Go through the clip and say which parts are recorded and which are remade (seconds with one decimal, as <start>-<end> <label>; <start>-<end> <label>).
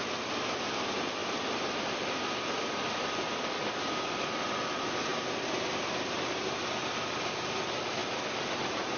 0.0-1.2 recorded; 1.2-4.4 remade; 4.4-5.1 recorded; 5.1-5.8 remade; 5.8-8.0 recorded; 8.0-8.5 remade; 8.5-9.0 recorded